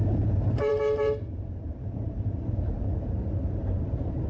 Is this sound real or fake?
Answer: fake